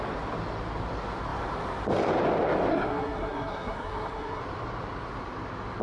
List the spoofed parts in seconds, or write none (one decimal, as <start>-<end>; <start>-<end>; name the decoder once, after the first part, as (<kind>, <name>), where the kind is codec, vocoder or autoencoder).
2.7-4.4 (codec, SNAC)